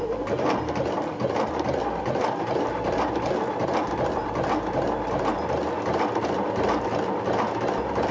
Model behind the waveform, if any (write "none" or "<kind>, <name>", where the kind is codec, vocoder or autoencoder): none